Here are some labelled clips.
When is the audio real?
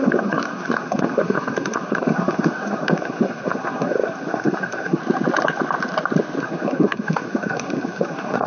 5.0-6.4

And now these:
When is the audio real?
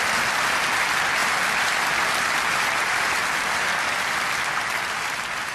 0.0-3.2; 4.2-5.5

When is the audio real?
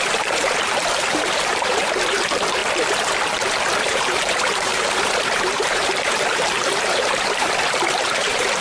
2.6-3.8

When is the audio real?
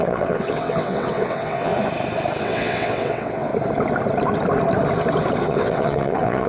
1.7-2.4; 3.5-5.4